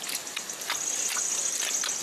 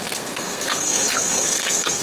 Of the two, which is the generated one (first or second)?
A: second